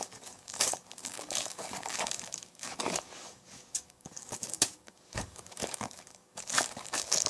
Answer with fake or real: fake